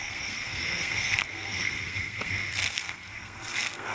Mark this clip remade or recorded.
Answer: remade